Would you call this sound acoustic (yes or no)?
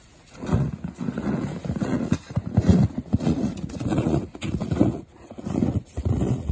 no